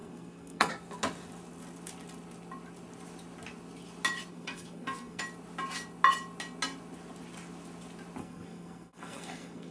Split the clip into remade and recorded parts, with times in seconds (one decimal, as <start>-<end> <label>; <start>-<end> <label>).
0.0-0.7 remade; 0.7-4.3 recorded; 4.3-5.2 remade; 5.2-8.2 recorded; 8.2-9.7 remade